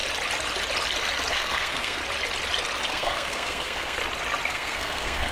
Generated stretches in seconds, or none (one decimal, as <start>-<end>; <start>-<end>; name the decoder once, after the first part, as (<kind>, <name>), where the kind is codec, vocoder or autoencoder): 1.3-2.0 (codec, SNAC); 2.9-4.0; 4.5-5.3